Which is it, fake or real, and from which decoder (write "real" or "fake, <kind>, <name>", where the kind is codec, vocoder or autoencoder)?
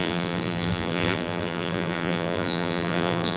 fake, vocoder, BigVGAN v2